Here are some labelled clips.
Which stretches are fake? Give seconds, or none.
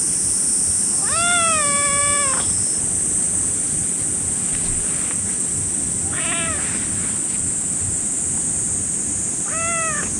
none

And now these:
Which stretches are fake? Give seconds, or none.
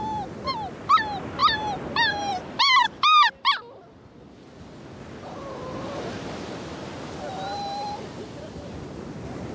none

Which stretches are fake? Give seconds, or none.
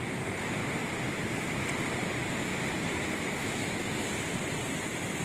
none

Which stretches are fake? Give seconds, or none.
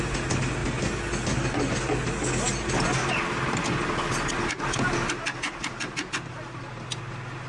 none